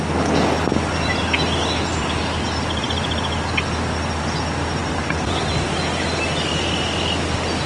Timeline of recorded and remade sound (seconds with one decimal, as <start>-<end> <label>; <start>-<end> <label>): 0.0-1.9 recorded; 1.9-4.2 remade; 4.2-4.8 recorded; 4.8-5.4 remade; 5.4-7.7 recorded

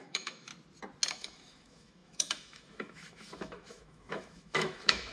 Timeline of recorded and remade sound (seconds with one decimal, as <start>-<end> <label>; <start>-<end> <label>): 0.0-0.5 remade; 0.5-1.1 recorded; 1.1-5.1 remade

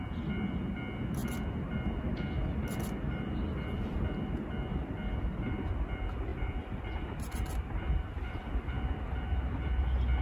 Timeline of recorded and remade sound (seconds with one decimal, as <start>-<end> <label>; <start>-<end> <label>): 0.0-6.3 recorded; 6.3-8.4 remade; 8.4-10.2 recorded

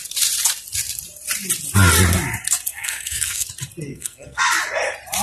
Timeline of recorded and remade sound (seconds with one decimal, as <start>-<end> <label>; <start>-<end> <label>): 0.0-2.7 recorded; 2.7-3.5 remade; 3.5-3.9 recorded; 3.9-4.4 remade; 4.4-5.2 recorded

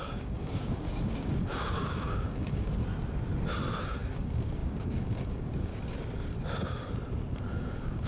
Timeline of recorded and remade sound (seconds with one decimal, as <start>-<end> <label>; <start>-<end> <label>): 0.0-2.8 remade; 2.8-4.1 recorded; 4.1-5.7 remade; 5.7-7.5 recorded; 7.5-8.1 remade

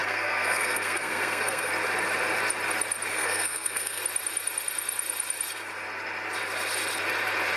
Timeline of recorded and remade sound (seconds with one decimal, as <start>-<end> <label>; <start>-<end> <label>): 0.0-1.7 remade; 1.7-3.1 recorded; 3.1-4.0 remade; 4.0-7.6 recorded

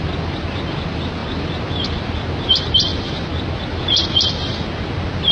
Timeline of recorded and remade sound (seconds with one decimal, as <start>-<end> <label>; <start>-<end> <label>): 0.0-5.3 recorded